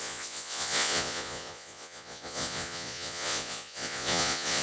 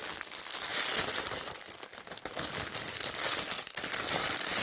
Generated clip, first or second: first